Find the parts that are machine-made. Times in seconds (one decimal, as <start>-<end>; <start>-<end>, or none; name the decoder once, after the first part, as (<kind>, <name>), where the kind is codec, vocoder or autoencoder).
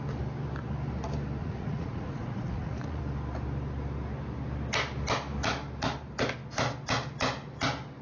1.4-3.0 (vocoder, Vocos)